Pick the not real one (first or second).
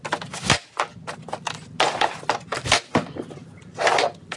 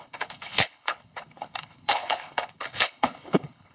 second